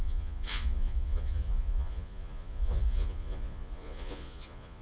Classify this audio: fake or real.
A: fake